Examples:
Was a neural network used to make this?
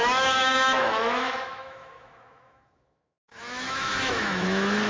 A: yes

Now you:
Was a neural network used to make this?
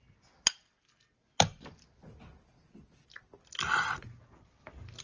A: no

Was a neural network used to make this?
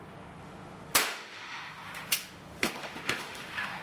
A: yes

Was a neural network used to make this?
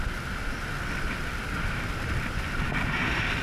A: no